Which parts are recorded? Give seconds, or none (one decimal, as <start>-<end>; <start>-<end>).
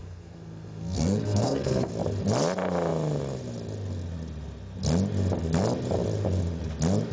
1.9-7.1